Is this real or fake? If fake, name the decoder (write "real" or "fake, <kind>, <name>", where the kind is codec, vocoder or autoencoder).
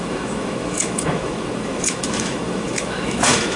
fake, autoencoder, DAC-VAE